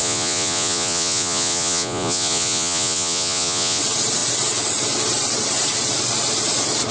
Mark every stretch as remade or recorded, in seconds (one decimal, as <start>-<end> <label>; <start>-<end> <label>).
0.0-3.8 remade; 3.8-6.9 recorded